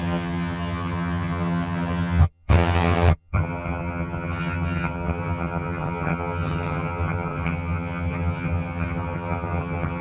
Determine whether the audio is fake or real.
fake